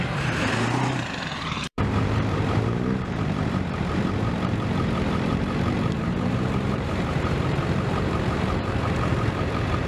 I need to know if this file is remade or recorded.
remade